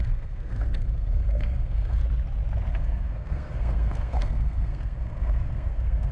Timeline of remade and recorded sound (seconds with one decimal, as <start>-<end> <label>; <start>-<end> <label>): 0.0-2.0 remade; 2.0-2.7 recorded; 2.7-6.1 remade

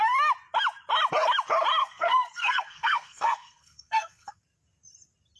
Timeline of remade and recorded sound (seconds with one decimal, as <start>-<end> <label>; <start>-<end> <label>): 0.0-1.8 recorded; 1.8-4.4 remade; 4.4-5.4 recorded

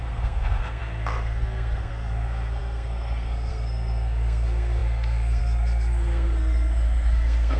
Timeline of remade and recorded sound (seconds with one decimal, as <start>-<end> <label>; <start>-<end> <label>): 0.0-7.6 remade

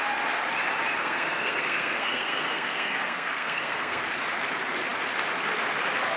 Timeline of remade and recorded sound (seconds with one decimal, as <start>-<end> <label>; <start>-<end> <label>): 0.0-1.0 recorded; 1.0-4.0 remade; 4.0-6.2 recorded

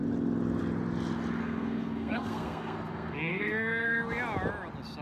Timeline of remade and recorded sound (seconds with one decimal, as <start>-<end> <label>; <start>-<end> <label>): 0.0-1.4 recorded; 1.4-4.0 remade; 4.0-5.0 recorded

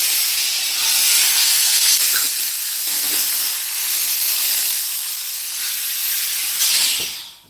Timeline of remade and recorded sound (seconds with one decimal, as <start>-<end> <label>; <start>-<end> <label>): 0.0-1.1 recorded; 1.1-5.6 remade; 5.6-7.5 recorded

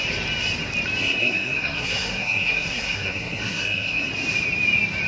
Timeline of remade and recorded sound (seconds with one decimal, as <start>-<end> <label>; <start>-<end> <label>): 0.0-1.0 recorded; 1.0-4.1 remade; 4.1-5.1 recorded

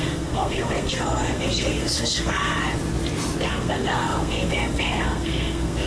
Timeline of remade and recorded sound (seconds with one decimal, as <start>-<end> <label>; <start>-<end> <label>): 0.0-2.6 remade; 2.6-3.5 recorded; 3.5-5.9 remade